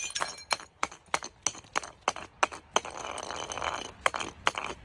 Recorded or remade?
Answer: recorded